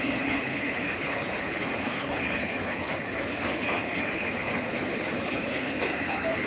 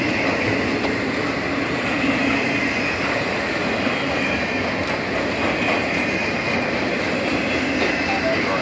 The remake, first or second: first